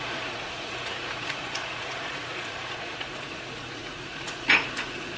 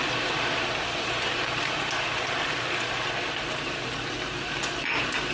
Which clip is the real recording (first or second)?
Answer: second